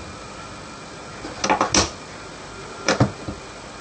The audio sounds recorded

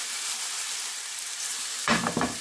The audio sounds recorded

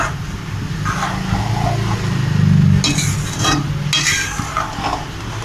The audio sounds recorded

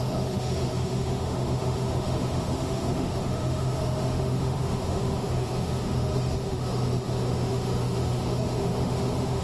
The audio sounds remade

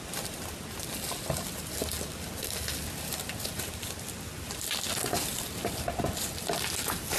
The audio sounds recorded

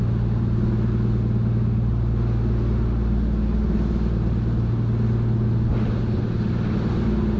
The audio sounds recorded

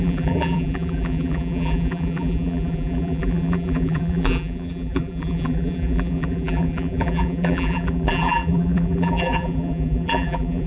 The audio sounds remade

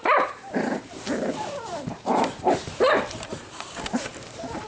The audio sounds remade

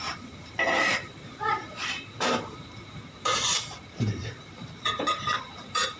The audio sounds remade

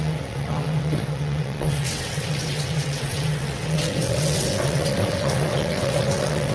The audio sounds remade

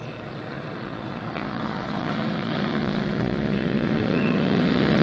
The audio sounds remade